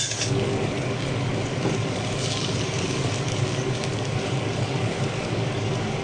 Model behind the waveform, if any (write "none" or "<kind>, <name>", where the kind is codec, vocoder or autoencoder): codec, DAC